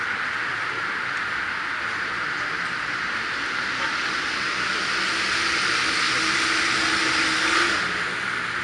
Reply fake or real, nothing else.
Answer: real